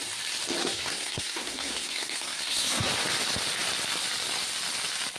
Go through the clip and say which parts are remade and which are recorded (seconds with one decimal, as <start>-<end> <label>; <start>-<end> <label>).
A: 0.0-0.6 recorded; 0.6-2.9 remade; 2.9-5.2 recorded